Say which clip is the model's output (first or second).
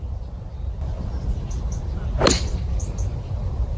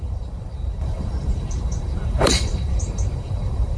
second